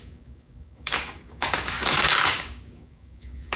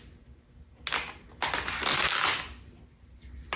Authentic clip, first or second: second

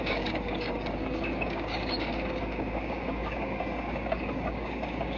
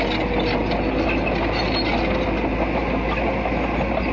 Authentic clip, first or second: second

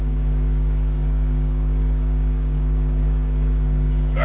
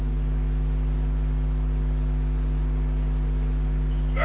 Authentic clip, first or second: second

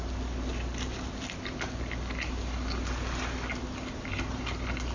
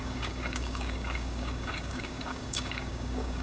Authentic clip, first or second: first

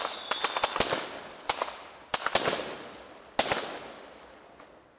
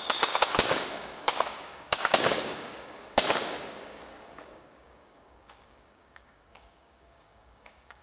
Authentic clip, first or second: first